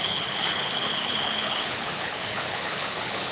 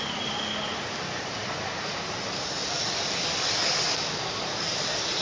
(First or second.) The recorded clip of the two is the second